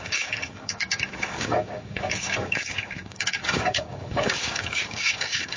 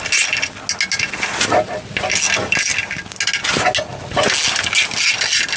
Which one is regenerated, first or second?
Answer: first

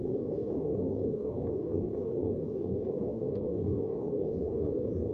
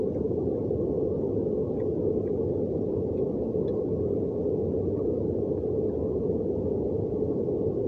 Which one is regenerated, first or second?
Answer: first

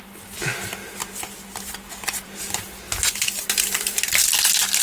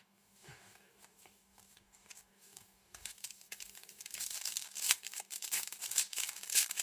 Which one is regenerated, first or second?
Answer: second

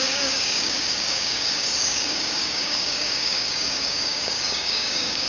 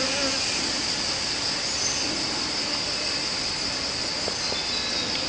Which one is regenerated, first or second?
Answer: first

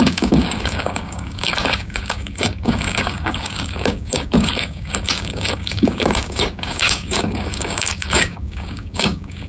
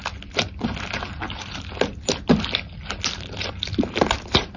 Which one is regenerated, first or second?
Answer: first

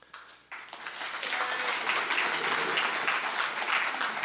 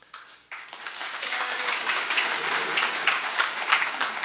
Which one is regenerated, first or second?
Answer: second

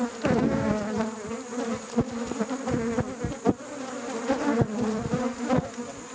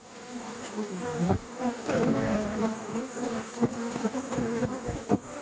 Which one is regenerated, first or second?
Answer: second